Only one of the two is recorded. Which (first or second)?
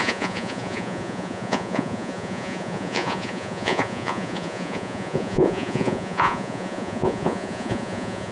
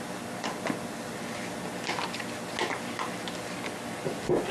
second